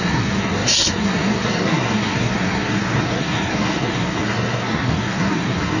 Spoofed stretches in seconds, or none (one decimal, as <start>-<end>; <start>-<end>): 0.0-5.8